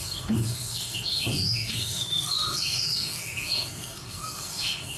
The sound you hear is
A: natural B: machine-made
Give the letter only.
B